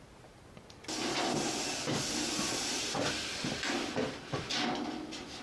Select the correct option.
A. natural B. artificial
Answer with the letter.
A